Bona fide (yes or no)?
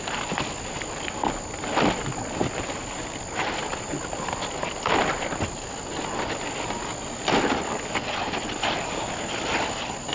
yes